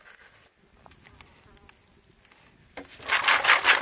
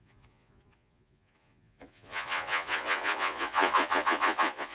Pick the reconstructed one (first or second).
second